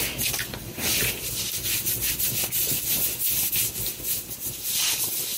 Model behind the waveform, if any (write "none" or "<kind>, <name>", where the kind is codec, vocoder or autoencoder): none